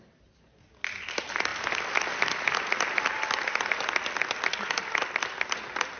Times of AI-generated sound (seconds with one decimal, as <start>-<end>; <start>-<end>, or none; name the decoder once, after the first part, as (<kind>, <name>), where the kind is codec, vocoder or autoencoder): none